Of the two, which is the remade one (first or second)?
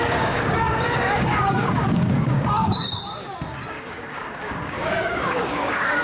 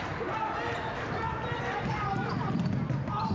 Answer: first